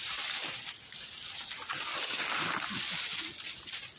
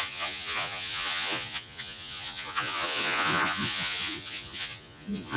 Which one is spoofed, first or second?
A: second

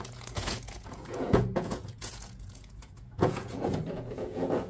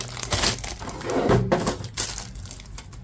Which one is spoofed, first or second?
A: first